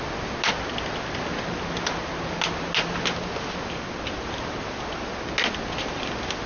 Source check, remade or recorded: recorded